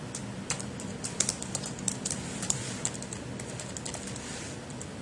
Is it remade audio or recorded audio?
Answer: remade